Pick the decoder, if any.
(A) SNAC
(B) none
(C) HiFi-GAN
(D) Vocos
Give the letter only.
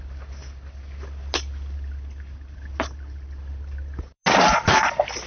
B